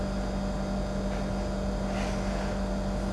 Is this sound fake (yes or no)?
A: no